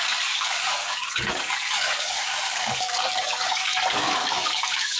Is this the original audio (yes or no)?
no